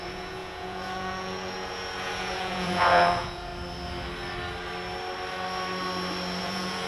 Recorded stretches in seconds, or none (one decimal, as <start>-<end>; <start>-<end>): 3.5-6.4